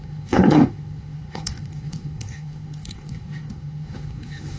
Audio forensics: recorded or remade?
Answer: remade